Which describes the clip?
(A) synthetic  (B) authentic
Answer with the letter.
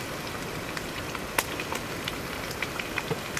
A